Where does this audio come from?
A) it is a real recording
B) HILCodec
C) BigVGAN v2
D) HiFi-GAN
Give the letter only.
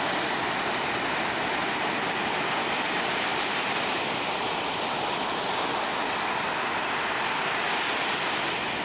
A